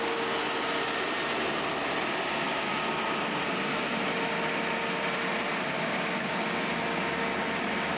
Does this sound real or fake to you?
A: real